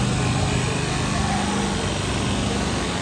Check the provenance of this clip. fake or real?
real